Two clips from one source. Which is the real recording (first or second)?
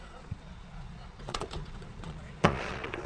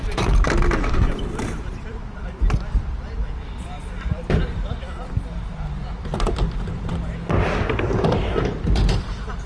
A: second